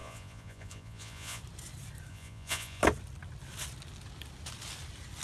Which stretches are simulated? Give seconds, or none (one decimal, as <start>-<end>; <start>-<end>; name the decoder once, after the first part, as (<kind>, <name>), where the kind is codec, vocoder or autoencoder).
0.0-1.4 (vocoder, Vocos); 2.1-2.8